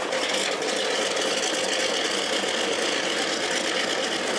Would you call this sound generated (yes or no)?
no